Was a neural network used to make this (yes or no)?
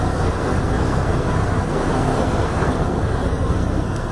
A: yes